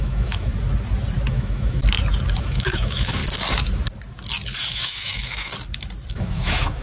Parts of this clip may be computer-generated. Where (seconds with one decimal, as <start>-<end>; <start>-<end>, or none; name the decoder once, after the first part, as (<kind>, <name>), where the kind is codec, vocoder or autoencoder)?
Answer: 0.0-0.5 (autoencoder, DAC-VAE); 1.3-1.8; 2.4-3.2; 4.7-5.5; 6.1-6.8